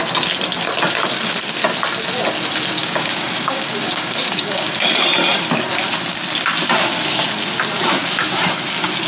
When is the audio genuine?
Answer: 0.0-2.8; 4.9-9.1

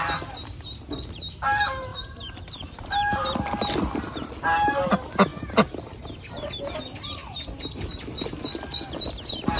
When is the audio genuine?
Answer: 0.0-1.9; 4.3-9.6

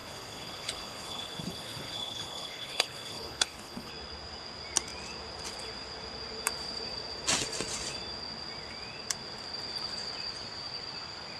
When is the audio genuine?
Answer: 3.9-11.4

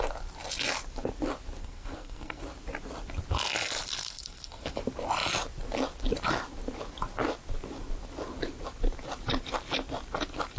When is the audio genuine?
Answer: 0.0-1.6; 2.4-4.0; 4.8-10.6

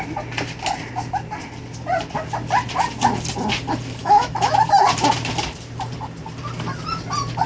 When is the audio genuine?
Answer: 0.0-4.0; 4.5-7.5